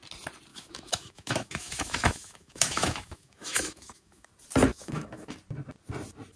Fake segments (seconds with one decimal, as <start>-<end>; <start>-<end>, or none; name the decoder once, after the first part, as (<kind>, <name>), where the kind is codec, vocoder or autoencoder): 0.5-4.3 (autoencoder, DAC-VAE); 4.7-5.3